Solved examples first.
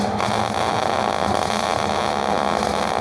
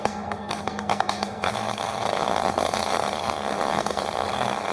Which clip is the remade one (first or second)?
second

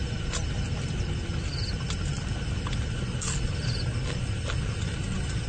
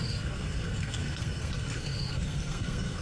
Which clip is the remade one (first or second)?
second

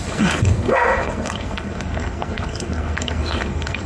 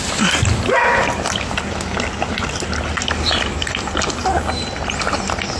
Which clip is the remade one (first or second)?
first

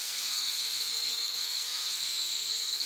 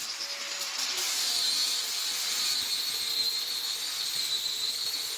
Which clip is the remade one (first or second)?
first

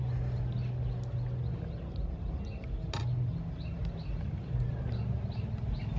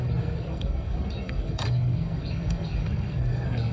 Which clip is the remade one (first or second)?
second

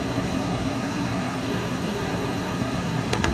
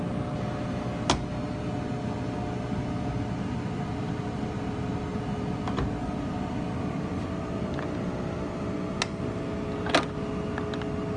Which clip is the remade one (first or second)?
first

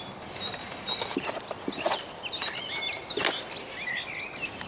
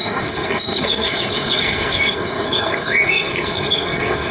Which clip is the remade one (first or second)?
second